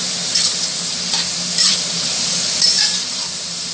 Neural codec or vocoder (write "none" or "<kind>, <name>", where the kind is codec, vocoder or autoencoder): vocoder, BigVGAN v2